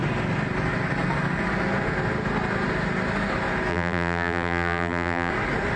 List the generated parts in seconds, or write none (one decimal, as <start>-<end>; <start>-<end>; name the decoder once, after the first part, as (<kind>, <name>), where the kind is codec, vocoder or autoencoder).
3.7-5.3 (vocoder, BigVGAN v2)